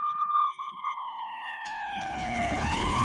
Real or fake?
fake